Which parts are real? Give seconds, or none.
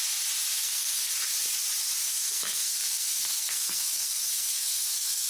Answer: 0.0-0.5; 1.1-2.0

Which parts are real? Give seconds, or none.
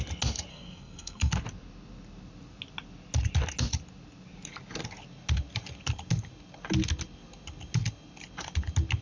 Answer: 0.0-0.5; 1.3-9.0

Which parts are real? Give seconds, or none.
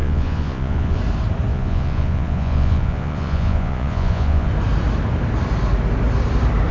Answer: 1.0-1.5; 4.5-6.7